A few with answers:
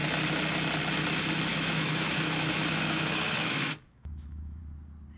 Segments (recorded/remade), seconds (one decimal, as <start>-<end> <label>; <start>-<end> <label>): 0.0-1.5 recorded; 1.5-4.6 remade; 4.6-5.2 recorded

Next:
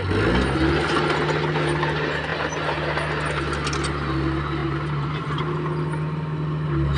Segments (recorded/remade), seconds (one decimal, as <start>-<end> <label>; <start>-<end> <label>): 0.0-4.6 recorded; 4.6-5.4 remade; 5.4-7.0 recorded

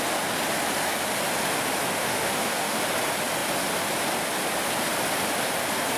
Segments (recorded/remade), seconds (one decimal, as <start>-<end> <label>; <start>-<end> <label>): 0.0-2.0 recorded; 2.0-2.8 remade; 2.8-6.0 recorded

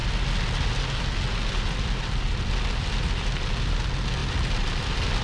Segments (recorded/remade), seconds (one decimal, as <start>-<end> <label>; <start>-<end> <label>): 0.0-5.2 recorded

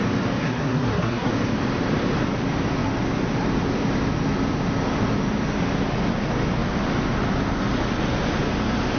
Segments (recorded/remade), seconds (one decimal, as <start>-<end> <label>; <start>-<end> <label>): 0.0-0.4 recorded; 0.4-1.3 remade; 1.3-9.0 recorded

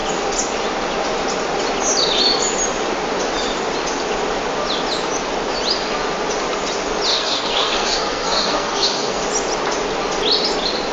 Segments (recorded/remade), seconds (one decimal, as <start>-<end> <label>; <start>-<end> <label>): 0.0-7.1 recorded; 7.1-9.2 remade; 9.2-10.9 recorded